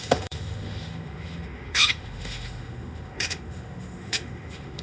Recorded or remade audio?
remade